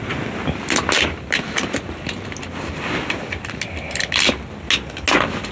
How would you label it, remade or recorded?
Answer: recorded